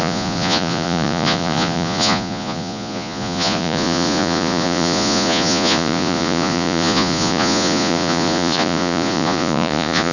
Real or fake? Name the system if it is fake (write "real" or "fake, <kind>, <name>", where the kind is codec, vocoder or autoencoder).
fake, vocoder, Vocos